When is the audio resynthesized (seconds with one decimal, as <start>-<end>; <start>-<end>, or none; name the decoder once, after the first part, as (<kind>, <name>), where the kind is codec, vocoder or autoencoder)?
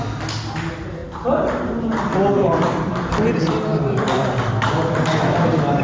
2.4-4.8 (vocoder, BigVGAN v2)